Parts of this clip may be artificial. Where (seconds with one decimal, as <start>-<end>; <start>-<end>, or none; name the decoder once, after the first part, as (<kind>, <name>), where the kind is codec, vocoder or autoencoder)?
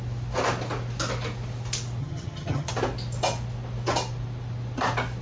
2.0-2.7 (vocoder, HiFi-GAN)